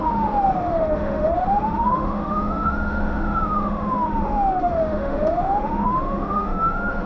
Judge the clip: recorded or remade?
remade